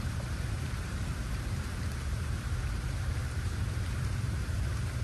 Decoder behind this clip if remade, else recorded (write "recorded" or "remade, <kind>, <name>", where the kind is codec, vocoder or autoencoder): remade, vocoder, BigVGAN v2